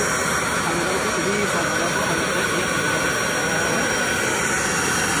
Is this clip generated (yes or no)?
no